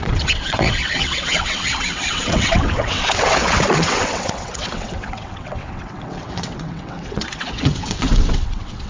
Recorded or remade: remade